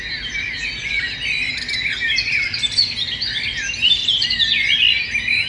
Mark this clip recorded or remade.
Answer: recorded